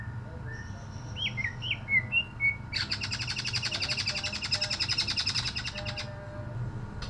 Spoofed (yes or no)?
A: no